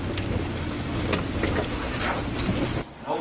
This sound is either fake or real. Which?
real